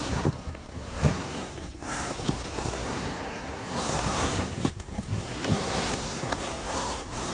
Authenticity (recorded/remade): remade